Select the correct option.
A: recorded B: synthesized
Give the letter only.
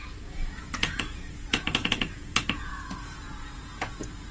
B